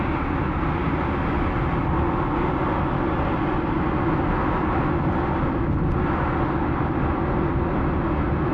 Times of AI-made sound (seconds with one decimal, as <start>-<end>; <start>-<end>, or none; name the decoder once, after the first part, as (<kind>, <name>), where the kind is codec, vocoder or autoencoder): none